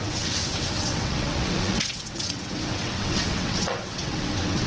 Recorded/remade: remade